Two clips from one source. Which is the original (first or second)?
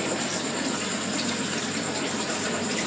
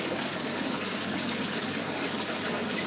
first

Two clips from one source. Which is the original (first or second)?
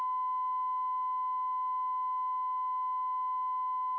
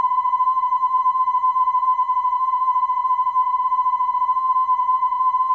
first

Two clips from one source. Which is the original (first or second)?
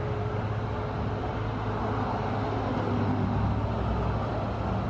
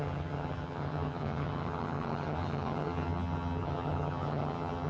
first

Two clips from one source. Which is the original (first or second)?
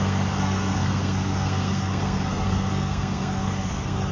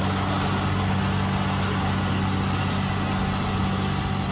second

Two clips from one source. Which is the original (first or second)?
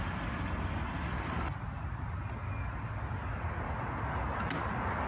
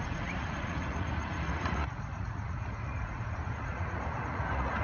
first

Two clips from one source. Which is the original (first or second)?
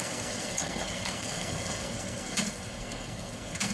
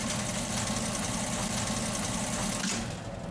second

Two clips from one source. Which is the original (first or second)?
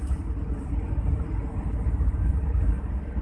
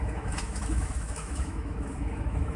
first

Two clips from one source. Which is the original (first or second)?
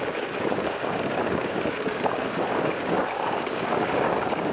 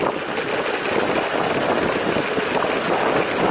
second